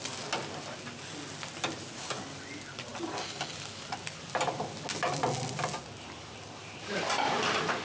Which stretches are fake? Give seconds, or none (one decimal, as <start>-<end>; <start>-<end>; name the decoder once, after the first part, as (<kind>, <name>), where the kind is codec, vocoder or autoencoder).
none